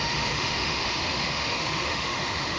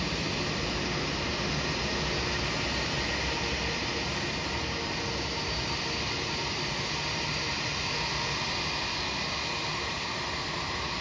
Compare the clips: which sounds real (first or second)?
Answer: second